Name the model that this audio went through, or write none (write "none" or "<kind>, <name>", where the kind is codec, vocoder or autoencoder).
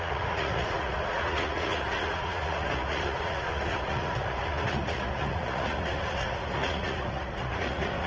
vocoder, Vocos